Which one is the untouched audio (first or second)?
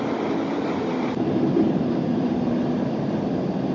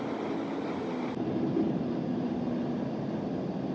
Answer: second